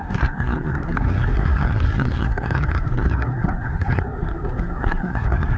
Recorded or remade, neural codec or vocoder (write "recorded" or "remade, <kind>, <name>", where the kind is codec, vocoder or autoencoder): remade, codec, SNAC